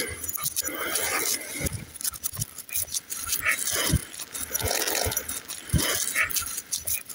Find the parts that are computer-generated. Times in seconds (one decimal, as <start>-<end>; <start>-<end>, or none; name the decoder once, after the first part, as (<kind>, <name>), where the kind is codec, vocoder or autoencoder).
none